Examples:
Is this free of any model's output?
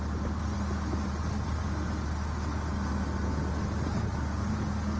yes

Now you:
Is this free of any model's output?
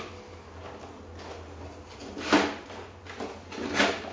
yes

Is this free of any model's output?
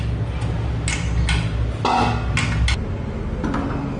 yes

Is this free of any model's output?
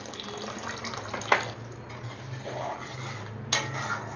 yes